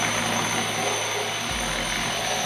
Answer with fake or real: real